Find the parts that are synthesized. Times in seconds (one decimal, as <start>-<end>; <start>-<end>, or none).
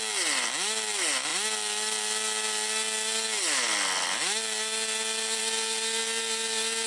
none